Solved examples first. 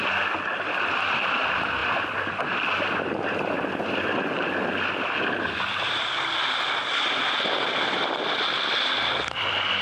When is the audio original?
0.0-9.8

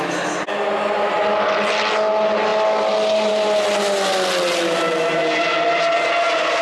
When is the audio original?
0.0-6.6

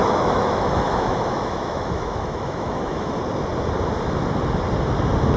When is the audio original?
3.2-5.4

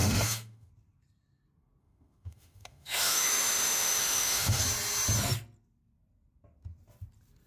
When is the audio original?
0.7-1.8; 4.6-7.5

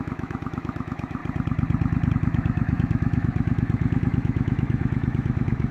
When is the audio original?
1.2-2.1